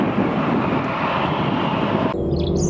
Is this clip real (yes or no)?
yes